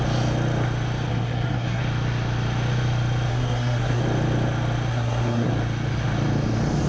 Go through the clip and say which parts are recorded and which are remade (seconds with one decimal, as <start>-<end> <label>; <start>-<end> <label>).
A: 0.0-1.1 recorded; 1.1-1.8 remade; 1.8-3.3 recorded; 3.3-4.0 remade; 4.0-4.9 recorded; 4.9-5.5 remade; 5.5-6.9 recorded